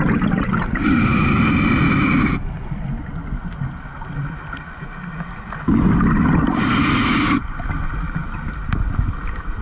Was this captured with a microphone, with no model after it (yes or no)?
yes